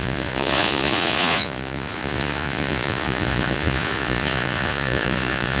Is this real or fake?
fake